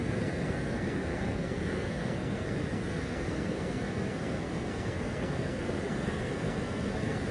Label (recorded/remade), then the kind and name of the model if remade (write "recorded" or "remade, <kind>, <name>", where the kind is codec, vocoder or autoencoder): remade, codec, SNAC